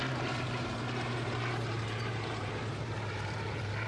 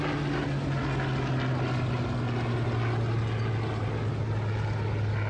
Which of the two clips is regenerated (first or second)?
first